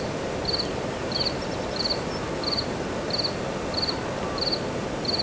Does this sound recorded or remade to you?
recorded